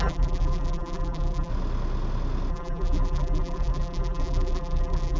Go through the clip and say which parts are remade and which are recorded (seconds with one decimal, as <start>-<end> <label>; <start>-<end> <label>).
0.0-1.5 remade; 1.5-2.5 recorded; 2.5-5.2 remade